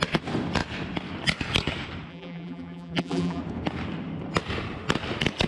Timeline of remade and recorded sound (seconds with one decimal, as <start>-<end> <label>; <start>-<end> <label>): 0.0-2.1 recorded; 2.1-3.4 remade; 3.4-5.5 recorded